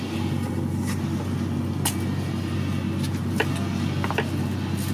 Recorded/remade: recorded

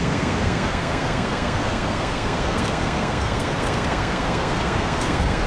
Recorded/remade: remade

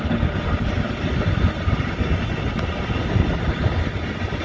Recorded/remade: recorded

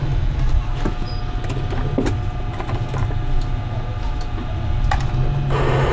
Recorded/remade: recorded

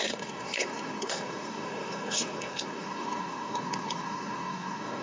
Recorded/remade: remade